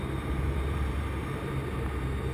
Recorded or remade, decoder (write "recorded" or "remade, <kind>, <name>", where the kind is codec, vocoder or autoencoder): remade, vocoder, BigVGAN v2